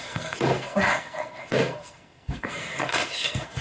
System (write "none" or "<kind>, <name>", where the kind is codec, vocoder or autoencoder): codec, SNAC